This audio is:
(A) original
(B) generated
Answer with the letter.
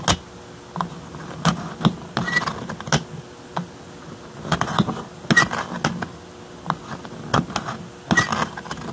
A